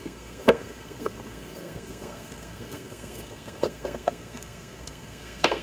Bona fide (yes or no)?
no